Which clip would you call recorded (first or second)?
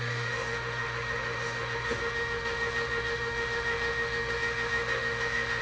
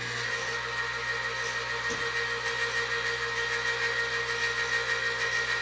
second